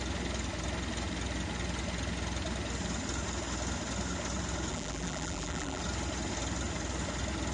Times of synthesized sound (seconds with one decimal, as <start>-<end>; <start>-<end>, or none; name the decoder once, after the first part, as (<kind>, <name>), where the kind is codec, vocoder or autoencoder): 4.7-5.8 (vocoder, BigVGAN v2)